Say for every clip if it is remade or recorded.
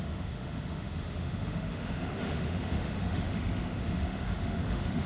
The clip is remade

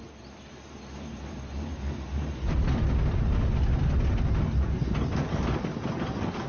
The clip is recorded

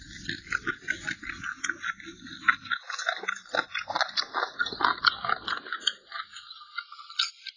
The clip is recorded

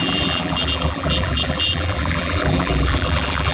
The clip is remade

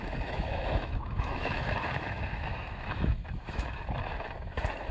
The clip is remade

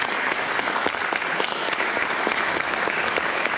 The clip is remade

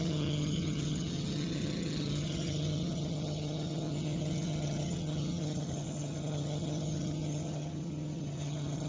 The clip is remade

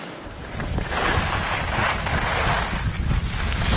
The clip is recorded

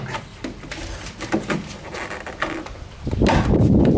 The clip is recorded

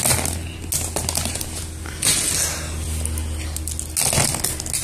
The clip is recorded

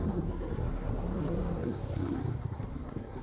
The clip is remade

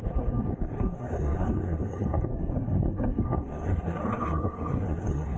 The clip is remade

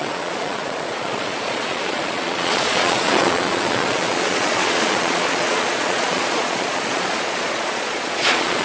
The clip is remade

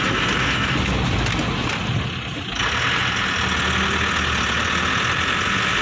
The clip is recorded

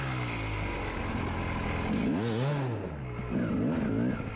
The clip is recorded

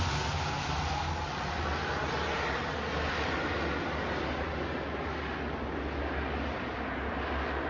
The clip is recorded